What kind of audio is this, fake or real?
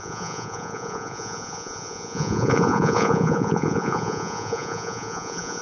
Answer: fake